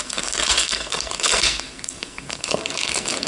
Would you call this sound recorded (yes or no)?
no